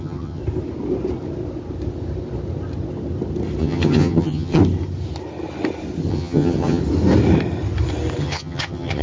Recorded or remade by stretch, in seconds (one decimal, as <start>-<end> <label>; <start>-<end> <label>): 0.0-0.4 remade; 0.4-3.6 recorded; 3.6-4.6 remade; 4.6-6.1 recorded; 6.1-6.8 remade; 6.8-8.2 recorded; 8.2-9.0 remade